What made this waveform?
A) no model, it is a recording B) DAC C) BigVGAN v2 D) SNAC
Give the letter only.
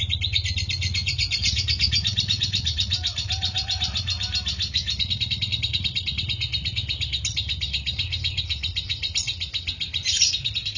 A